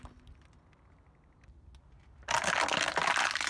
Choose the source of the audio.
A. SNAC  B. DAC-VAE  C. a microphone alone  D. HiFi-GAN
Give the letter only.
C